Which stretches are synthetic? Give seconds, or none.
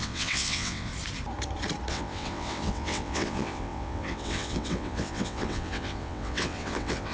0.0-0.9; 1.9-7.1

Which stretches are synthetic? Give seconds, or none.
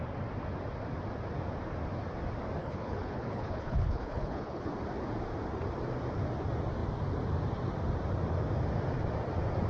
2.6-4.7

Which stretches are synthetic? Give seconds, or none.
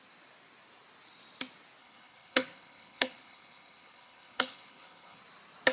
1.8-5.2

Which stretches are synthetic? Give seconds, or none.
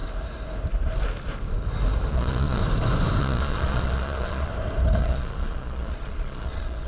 2.1-2.6; 3.2-4.5; 5.0-6.9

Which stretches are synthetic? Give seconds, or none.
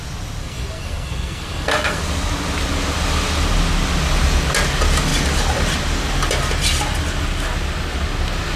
0.4-2.0